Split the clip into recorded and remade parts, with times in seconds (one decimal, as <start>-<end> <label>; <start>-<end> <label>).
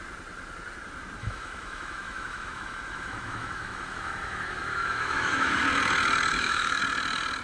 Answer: 0.0-1.2 recorded; 1.2-5.6 remade; 5.6-6.3 recorded; 6.3-6.8 remade; 6.8-7.4 recorded